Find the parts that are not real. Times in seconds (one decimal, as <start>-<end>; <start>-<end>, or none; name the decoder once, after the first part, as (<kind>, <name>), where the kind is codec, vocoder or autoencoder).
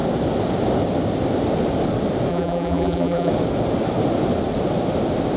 2.3-3.3 (vocoder, BigVGAN v2)